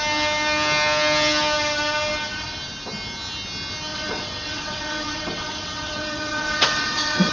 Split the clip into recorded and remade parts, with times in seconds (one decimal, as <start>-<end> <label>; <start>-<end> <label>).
0.0-3.9 recorded; 3.9-7.3 remade